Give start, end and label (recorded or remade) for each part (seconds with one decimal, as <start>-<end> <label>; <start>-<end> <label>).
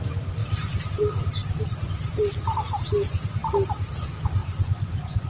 0.0-4.4 recorded; 4.4-5.3 remade